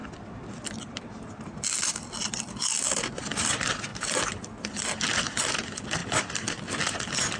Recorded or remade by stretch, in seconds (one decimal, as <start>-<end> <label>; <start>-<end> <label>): 0.0-7.4 recorded